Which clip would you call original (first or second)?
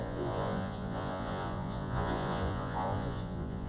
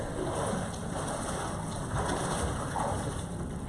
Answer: second